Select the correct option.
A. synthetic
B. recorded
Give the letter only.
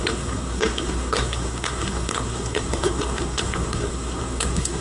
A